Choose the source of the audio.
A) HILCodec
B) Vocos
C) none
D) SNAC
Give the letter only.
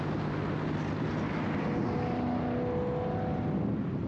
C